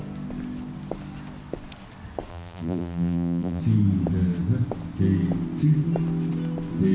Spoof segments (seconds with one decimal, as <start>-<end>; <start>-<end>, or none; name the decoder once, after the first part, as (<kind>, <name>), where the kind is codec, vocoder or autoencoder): 2.3-3.6 (vocoder, BigVGAN v2)